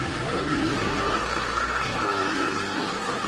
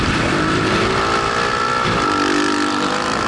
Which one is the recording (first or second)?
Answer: second